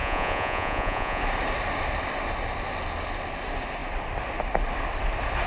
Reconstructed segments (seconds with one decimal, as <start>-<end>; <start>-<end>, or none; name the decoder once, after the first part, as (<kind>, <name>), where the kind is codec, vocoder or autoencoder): 0.0-1.2 (vocoder, Vocos)